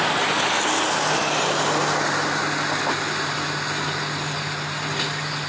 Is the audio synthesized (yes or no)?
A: no